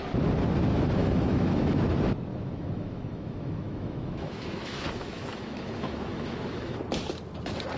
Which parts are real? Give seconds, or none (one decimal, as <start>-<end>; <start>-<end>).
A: 0.0-1.0; 1.8-2.3; 6.8-7.8